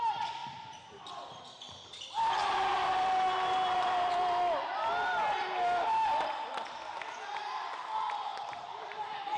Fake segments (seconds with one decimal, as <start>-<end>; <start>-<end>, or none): 0.4-4.1; 8.3-9.4